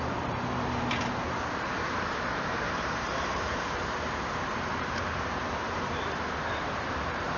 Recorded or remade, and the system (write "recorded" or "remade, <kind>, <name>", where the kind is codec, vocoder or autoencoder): remade, vocoder, BigVGAN v2